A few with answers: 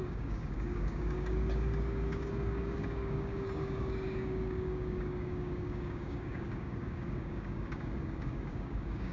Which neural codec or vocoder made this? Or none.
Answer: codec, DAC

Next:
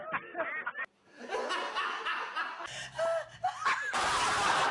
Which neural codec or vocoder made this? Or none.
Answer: none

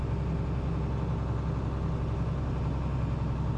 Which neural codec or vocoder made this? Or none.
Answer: none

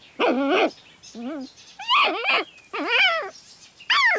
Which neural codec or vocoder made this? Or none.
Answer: none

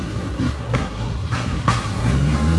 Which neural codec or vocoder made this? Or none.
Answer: codec, SNAC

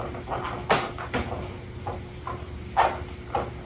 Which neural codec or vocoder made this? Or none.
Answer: none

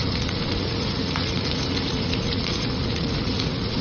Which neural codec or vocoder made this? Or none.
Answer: vocoder, Vocos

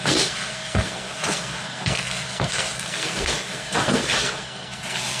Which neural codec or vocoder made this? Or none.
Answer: codec, SNAC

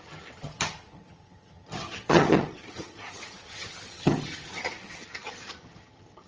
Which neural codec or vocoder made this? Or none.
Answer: vocoder, HiFi-GAN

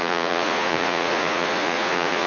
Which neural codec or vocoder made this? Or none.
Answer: vocoder, Vocos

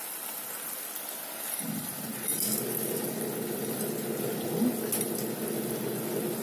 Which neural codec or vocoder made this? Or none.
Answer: none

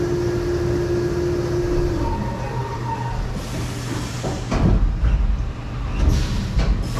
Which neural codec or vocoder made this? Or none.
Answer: none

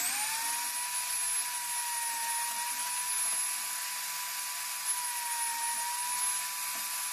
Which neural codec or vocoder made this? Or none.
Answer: none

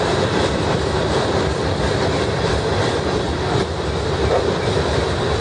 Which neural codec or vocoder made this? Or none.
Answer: vocoder, BigVGAN v2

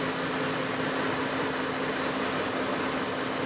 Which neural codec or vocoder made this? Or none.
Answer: none